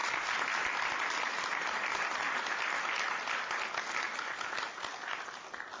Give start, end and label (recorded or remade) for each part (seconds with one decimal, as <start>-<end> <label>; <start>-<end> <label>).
0.0-5.8 recorded